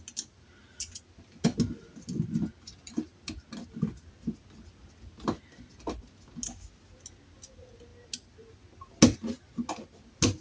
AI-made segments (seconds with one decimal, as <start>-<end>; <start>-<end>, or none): none